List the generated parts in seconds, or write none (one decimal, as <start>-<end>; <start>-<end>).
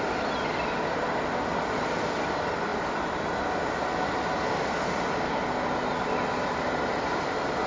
none